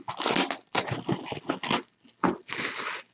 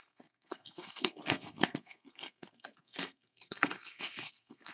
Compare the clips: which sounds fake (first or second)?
second